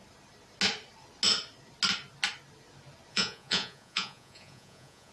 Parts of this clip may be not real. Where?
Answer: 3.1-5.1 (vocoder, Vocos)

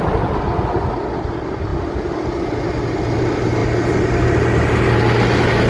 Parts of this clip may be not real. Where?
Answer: none

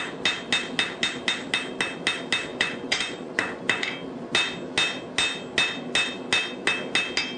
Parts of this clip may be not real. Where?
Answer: 2.5-3.9 (vocoder, Vocos)

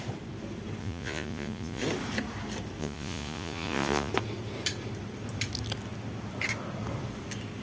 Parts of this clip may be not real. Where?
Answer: 0.8-1.8 (vocoder, Vocos); 2.8-4.1

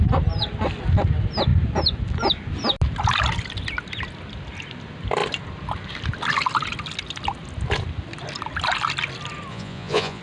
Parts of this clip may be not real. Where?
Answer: 9.5-10.2 (vocoder, Vocos)

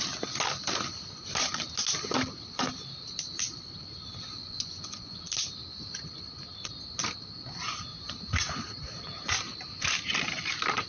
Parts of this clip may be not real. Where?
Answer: 4.4-5.2 (vocoder, Vocos)